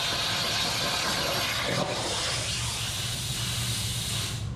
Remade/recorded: recorded